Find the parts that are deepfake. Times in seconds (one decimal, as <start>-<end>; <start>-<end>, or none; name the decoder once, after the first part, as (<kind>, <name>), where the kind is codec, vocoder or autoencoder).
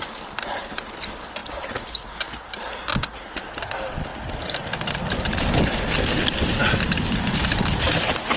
1.4-2.5 (vocoder, BigVGAN v2); 4.1-5.6; 6.6-7.4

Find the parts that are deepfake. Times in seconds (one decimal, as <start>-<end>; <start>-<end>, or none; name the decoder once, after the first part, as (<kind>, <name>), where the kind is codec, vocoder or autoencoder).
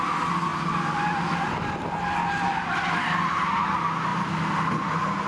none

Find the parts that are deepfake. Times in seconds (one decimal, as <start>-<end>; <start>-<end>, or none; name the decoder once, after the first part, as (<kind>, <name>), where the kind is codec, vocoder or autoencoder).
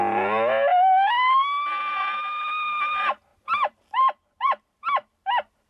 3.3-3.9 (vocoder, BigVGAN v2)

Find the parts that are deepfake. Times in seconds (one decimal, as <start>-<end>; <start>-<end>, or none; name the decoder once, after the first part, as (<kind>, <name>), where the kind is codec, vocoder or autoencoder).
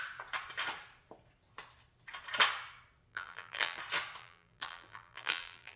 3.1-3.8 (vocoder, BigVGAN v2); 4.2-5.8